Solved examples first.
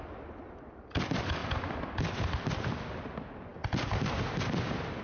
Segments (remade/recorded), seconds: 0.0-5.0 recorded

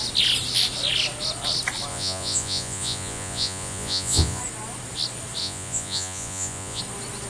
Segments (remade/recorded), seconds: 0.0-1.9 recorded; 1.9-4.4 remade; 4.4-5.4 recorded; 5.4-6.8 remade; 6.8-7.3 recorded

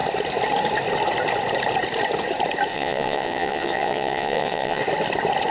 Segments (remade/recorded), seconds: 0.0-2.7 recorded; 2.7-4.8 remade; 4.8-5.5 recorded